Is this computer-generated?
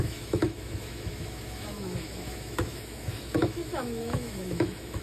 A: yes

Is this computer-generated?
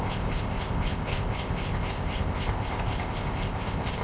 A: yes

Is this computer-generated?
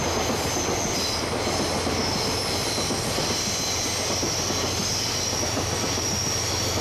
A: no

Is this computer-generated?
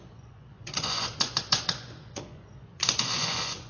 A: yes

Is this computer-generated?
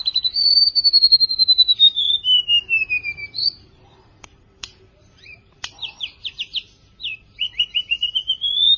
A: yes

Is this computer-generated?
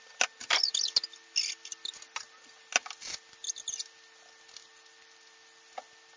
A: no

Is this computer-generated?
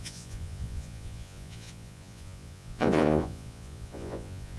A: yes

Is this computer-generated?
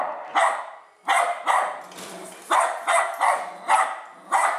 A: no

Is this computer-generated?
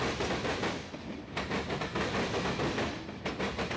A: yes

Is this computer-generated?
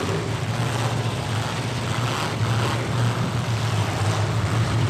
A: no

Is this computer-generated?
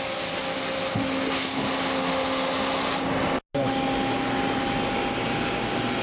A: no